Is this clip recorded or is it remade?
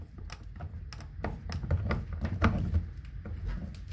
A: recorded